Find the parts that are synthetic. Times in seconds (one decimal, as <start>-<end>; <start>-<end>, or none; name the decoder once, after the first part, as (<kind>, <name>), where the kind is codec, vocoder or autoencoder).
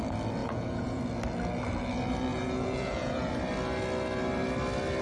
0.4-1.0 (vocoder, Vocos); 2.3-3.3